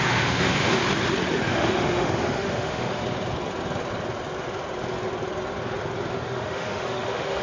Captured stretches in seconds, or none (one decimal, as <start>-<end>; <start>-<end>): 0.8-1.5; 3.0-6.1